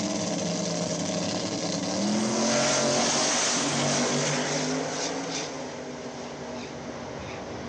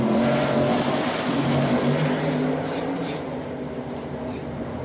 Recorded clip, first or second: first